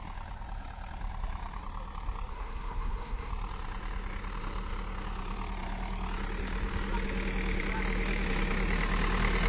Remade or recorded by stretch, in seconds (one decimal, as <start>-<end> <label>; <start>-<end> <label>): 0.0-2.3 recorded; 2.3-3.3 remade; 3.3-9.5 recorded